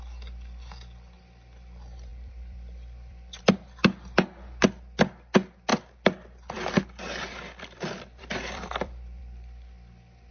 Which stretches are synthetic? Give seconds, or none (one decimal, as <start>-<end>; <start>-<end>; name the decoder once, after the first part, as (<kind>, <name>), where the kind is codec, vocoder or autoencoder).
2.1-3.4 (vocoder, BigVGAN v2); 5.7-9.2